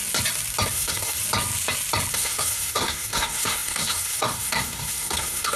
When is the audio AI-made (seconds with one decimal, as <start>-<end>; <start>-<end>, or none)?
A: 0.7-1.2; 2.1-5.6